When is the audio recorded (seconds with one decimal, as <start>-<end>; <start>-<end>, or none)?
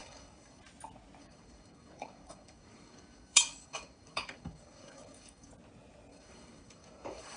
0.6-1.2; 5.5-6.1